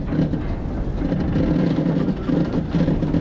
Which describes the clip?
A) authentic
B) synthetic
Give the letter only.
A